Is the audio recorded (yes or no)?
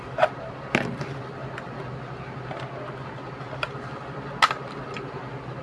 yes